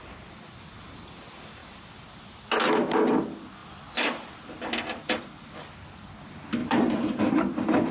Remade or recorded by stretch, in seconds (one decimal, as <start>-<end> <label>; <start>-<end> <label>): 0.0-3.6 recorded; 3.6-4.6 remade; 4.6-6.6 recorded; 6.6-7.2 remade; 7.2-7.9 recorded